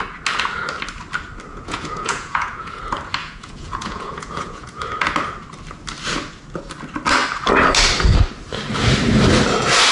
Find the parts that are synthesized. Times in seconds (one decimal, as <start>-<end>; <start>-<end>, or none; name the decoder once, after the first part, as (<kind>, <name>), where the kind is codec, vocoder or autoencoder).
1.5-2.8 (vocoder, Vocos); 3.2-4.8